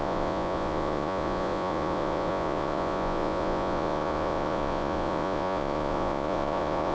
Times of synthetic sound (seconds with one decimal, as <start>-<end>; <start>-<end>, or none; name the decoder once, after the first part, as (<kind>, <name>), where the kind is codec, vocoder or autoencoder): 0.0-6.9 (vocoder, Vocos)

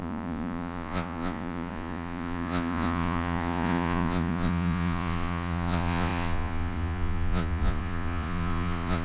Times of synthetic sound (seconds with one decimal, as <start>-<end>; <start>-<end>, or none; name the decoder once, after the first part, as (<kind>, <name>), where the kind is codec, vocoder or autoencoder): 0.0-9.0 (vocoder, Vocos)

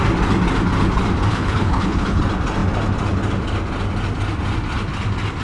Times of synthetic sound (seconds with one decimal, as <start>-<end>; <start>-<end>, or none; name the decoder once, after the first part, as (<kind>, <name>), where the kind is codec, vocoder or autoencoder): 1.3-2.2 (codec, HILCodec)